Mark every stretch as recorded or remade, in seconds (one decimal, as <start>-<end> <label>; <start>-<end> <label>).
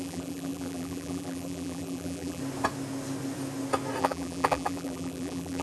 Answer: 0.0-2.4 remade; 2.4-4.0 recorded; 4.0-5.6 remade